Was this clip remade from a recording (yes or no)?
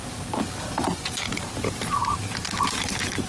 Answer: yes